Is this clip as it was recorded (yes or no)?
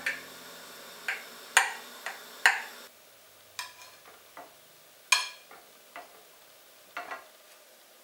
yes